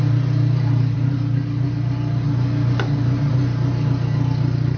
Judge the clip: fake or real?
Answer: real